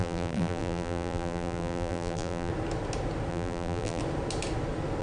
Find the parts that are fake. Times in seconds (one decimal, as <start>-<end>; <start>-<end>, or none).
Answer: 0.0-2.5; 3.3-4.0